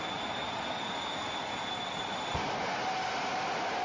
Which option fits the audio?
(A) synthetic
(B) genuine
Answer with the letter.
B